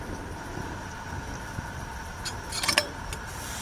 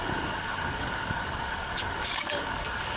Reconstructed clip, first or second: second